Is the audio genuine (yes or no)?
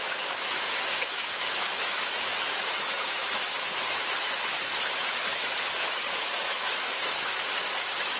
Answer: no